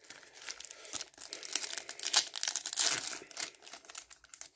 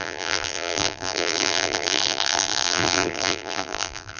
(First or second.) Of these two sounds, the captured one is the first